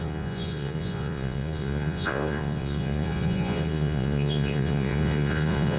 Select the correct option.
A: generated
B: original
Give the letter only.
A